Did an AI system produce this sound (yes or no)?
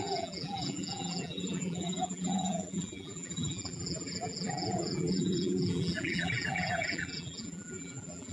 yes